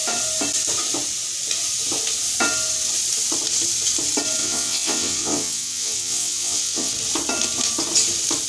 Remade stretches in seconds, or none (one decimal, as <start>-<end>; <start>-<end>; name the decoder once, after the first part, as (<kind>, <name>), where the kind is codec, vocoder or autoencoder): 4.4-6.9 (vocoder, WaveNeXt)